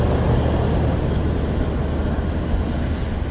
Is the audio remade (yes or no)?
no